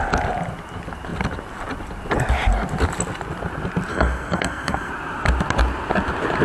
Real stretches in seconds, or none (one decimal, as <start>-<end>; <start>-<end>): 0.0-3.9; 4.9-6.4